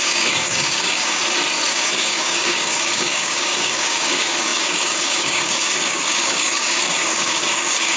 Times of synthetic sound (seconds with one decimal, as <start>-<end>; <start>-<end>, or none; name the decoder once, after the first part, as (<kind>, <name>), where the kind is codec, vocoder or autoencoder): 0.0-1.2 (codec, DAC); 1.7-8.0

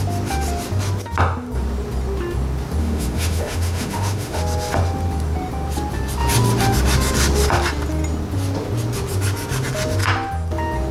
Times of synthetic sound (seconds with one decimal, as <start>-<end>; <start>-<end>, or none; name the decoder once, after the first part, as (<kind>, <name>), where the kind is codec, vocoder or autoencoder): 2.8-4.4 (autoencoder, DAC-VAE)

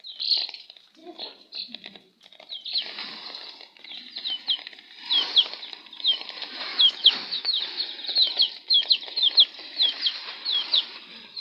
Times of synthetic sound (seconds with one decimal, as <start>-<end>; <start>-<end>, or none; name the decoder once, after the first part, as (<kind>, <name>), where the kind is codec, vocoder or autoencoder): 6.7-7.6 (autoencoder, DAC-VAE)

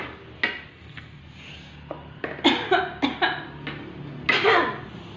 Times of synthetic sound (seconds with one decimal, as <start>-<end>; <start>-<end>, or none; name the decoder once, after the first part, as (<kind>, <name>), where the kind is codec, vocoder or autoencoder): 0.7-1.2 (codec, SNAC)

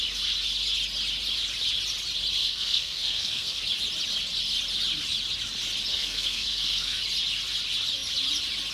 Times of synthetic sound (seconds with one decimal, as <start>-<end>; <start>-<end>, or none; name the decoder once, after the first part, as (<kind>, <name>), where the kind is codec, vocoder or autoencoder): 2.4-3.6 (codec, SNAC); 5.9-7.0

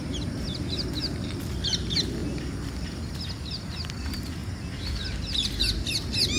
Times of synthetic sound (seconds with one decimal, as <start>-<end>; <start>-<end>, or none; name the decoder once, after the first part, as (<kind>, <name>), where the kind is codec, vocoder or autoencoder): none

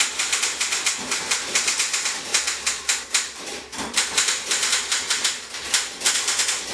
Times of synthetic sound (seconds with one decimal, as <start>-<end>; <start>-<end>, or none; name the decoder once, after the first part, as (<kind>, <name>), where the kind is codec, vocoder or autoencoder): 0.0-2.3 (vocoder, BigVGAN v2); 3.0-6.7